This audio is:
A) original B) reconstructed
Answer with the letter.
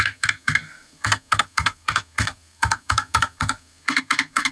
B